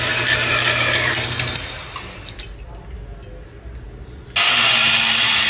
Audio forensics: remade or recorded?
recorded